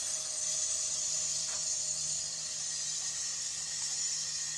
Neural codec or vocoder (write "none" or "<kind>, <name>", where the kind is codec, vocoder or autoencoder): none